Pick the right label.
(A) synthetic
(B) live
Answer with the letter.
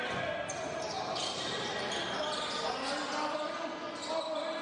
B